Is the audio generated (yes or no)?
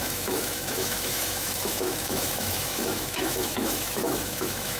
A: yes